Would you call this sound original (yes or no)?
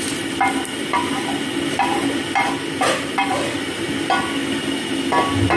yes